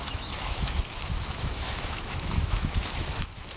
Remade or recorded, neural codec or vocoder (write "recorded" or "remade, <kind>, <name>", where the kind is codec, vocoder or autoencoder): remade, autoencoder, DAC-VAE